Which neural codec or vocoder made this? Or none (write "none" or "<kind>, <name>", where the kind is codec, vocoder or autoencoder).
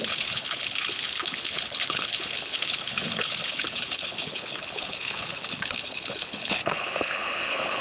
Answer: codec, HILCodec